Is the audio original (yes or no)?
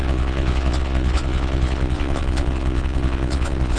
no